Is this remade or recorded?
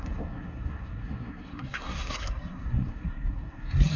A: remade